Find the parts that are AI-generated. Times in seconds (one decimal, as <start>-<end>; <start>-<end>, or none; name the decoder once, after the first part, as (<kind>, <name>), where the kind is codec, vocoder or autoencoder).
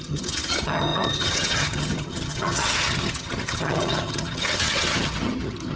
0.0-5.8 (vocoder, HiFi-GAN)